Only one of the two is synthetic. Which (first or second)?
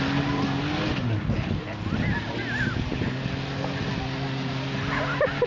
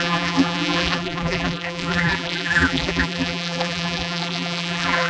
second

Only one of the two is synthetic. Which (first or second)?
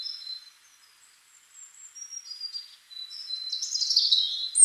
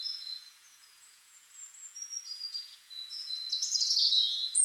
second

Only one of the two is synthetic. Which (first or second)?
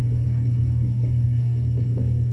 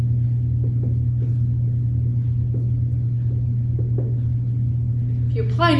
first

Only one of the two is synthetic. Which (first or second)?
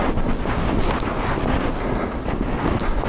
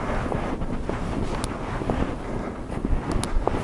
second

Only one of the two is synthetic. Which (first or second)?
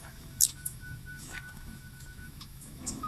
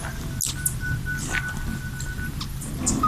first